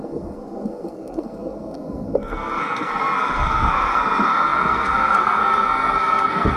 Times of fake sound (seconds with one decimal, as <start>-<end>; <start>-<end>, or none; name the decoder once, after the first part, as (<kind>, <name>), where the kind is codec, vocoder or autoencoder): 0.0-6.6 (codec, SNAC)